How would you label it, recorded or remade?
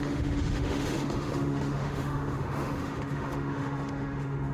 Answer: remade